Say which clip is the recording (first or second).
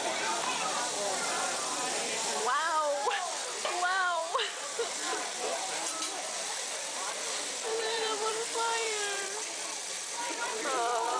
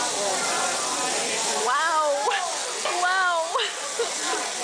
second